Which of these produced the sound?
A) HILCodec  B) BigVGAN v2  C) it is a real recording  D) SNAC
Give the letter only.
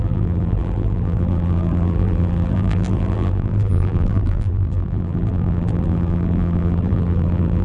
B